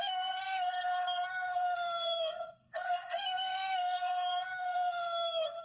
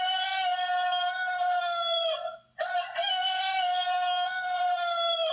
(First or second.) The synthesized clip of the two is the first